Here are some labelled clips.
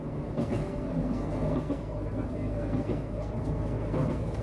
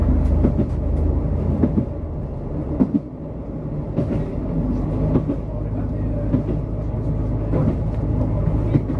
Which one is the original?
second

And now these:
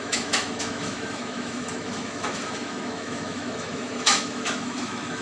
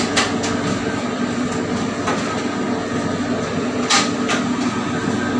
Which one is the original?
second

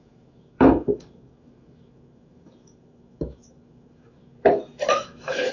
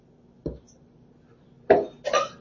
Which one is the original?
second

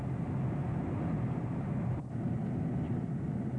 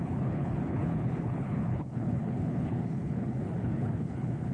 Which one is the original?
first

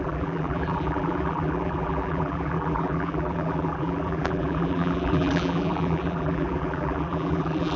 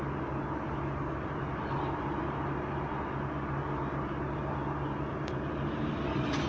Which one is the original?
second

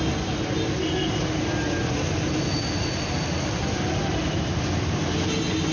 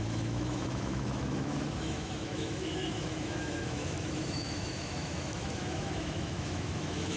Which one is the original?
first